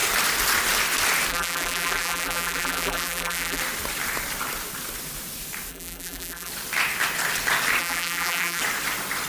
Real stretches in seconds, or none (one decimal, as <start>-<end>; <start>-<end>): 0.0-1.3; 3.6-5.7; 6.5-7.8; 8.6-9.3